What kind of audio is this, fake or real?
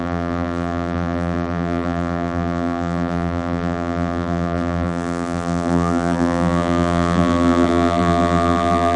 fake